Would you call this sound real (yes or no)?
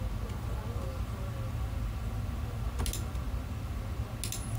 yes